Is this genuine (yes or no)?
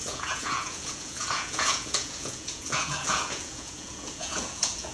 no